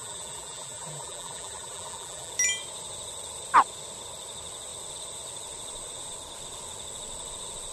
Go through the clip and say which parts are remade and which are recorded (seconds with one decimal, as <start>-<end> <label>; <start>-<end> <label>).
0.0-2.3 remade; 2.3-7.7 recorded